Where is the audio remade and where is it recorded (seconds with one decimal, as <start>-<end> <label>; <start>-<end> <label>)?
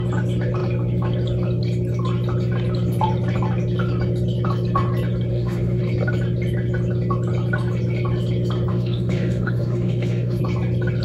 0.0-5.3 recorded; 5.3-5.8 remade; 5.8-8.7 recorded; 8.7-10.4 remade; 10.4-11.0 recorded